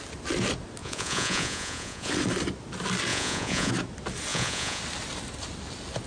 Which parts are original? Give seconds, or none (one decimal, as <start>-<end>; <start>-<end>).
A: 0.0-0.8; 2.1-3.1; 3.7-4.3; 4.8-6.1